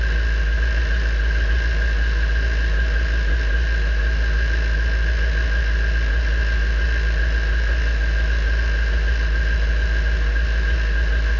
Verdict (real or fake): real